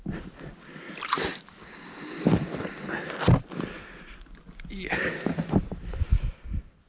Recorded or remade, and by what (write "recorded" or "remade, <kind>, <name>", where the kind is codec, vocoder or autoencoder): recorded